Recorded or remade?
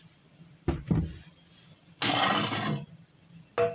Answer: recorded